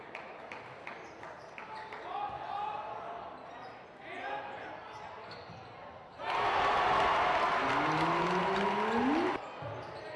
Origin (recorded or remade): recorded